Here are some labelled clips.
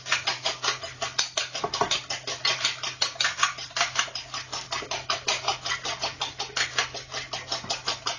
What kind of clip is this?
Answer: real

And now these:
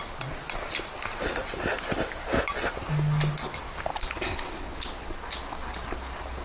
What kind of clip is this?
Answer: real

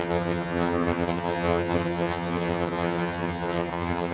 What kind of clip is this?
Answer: fake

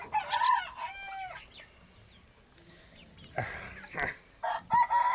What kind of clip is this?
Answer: real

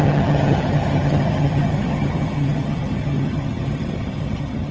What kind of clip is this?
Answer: fake